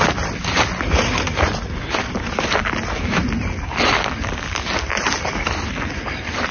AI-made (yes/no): no